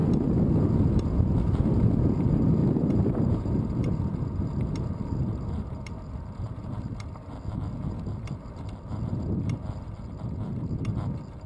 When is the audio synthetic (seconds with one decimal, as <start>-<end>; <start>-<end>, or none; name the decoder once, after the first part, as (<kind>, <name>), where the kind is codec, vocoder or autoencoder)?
2.6-4.0 (vocoder, BigVGAN v2)